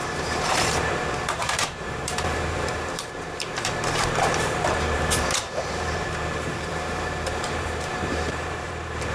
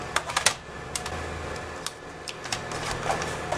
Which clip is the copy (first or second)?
first